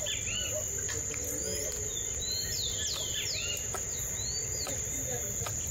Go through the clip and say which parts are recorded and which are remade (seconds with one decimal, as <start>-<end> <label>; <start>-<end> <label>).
0.0-5.7 recorded